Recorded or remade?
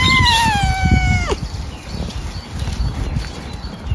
recorded